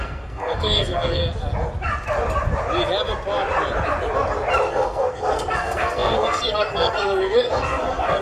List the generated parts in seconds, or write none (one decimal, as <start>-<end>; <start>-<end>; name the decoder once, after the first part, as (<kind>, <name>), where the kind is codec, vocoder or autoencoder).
0.0-1.2 (codec, SNAC); 4.7-8.2